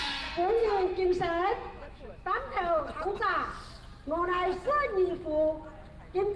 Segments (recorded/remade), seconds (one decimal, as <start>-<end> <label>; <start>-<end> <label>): 0.0-0.6 recorded; 0.6-2.8 remade; 2.8-6.4 recorded

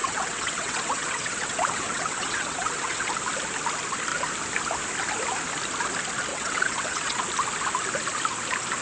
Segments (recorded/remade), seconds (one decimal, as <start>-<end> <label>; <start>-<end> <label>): 0.0-3.1 remade; 3.1-6.3 recorded; 6.3-7.2 remade; 7.2-8.8 recorded

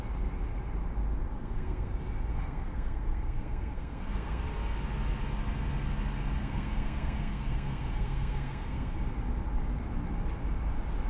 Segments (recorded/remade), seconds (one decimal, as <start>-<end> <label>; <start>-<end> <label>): 0.0-1.3 recorded; 1.3-1.9 remade; 1.9-2.3 recorded; 2.3-4.4 remade; 4.4-6.4 recorded; 6.4-8.9 remade; 8.9-11.1 recorded

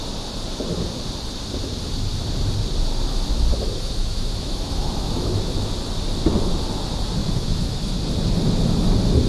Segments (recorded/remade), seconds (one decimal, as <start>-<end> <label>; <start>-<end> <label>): 0.0-3.5 recorded; 3.5-5.7 remade; 5.7-7.2 recorded; 7.2-8.0 remade; 8.0-9.3 recorded

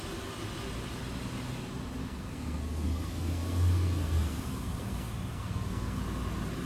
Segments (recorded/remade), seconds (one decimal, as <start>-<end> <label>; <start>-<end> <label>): 0.0-2.0 recorded; 2.0-6.0 remade; 6.0-6.7 recorded

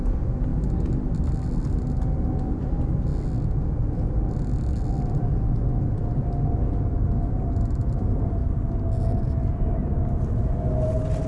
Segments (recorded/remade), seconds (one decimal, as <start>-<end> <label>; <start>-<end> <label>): 0.0-11.3 recorded